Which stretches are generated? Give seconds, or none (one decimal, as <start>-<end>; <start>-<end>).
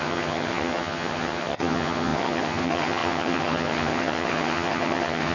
0.0-5.3